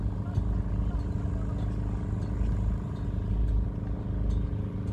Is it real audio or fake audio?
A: real